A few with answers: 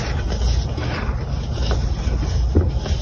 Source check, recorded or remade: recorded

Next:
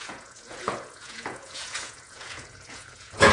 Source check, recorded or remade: remade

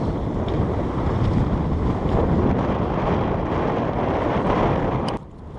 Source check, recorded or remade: remade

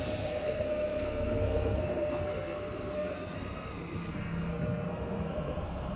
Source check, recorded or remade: remade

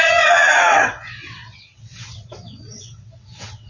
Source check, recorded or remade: remade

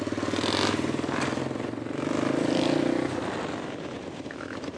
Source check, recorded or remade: recorded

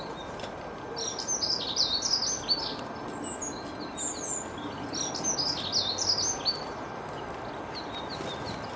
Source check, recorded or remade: recorded